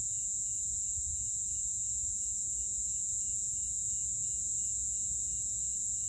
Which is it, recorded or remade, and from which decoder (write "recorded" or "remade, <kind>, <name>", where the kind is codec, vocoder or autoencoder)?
recorded